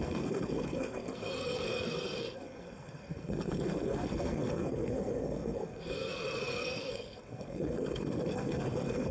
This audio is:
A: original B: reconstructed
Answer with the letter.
B